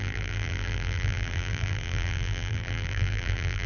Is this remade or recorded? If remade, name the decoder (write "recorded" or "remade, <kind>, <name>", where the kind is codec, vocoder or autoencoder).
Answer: remade, vocoder, BigVGAN v2